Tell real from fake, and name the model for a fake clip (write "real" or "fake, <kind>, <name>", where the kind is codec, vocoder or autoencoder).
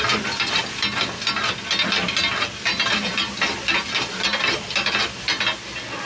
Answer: real